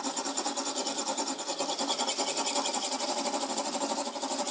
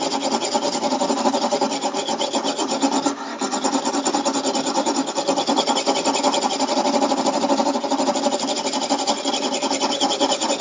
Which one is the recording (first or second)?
first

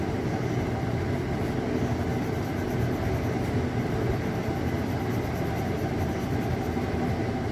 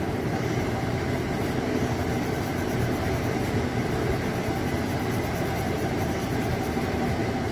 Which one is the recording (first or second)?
first